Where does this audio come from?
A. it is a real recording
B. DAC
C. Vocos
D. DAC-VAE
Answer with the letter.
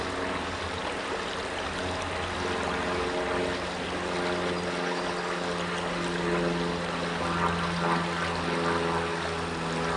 A